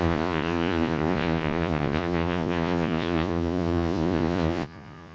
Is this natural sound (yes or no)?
no